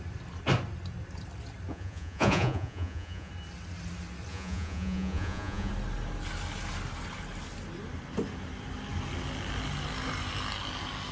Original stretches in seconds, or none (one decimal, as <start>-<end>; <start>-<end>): 0.0-1.7; 3.3-4.3; 5.7-11.1